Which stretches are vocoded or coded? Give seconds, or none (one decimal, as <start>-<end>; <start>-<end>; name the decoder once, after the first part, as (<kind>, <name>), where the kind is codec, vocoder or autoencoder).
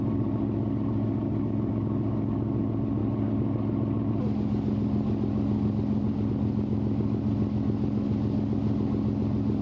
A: none